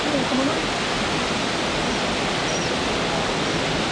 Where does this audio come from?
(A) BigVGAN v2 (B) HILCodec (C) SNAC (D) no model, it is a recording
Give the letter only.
D